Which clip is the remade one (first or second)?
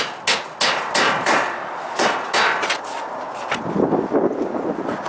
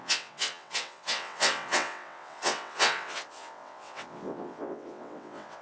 second